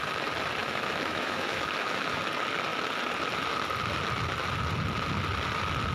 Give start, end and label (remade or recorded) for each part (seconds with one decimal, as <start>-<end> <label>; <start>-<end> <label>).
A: 0.0-0.6 recorded; 0.6-2.2 remade; 2.2-5.9 recorded